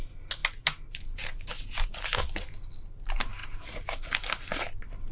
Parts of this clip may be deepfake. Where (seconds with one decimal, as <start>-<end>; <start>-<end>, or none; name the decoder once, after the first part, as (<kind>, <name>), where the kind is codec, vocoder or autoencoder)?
none